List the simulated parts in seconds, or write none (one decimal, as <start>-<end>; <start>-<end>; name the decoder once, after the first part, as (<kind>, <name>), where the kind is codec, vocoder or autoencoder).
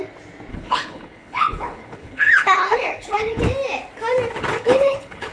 0.5-3.4 (codec, HILCodec); 4.5-5.3